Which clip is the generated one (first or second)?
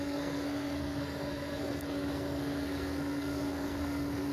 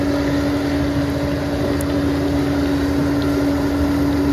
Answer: first